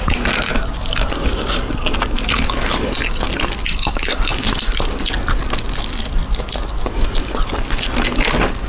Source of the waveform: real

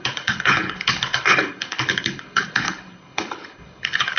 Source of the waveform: fake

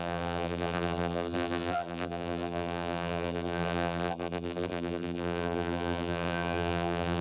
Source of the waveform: fake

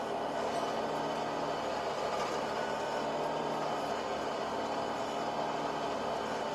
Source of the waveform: real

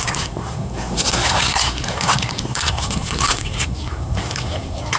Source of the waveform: fake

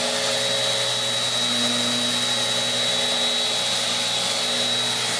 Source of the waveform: real